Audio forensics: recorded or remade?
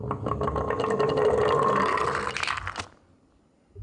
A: recorded